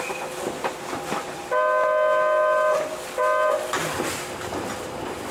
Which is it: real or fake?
real